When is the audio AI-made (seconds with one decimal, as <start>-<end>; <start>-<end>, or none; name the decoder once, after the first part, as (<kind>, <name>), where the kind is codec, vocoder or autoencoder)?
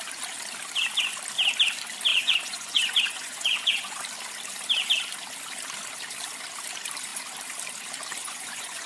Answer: 2.1-4.0 (vocoder, Vocos); 8.2-8.9